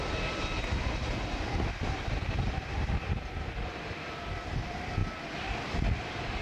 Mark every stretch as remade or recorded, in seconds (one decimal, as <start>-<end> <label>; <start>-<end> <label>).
0.0-6.4 recorded